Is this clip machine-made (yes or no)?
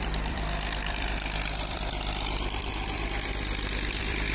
yes